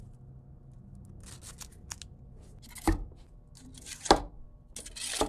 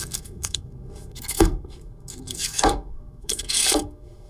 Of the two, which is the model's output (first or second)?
second